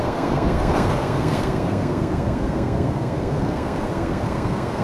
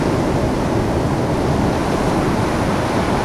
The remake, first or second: first